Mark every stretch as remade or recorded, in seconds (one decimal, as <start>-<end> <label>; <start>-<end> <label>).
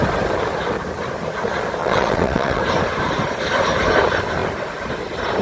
0.0-1.8 recorded; 1.8-2.6 remade; 2.6-5.4 recorded